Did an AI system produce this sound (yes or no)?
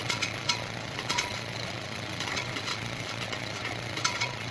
yes